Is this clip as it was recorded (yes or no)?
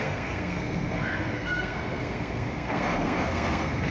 no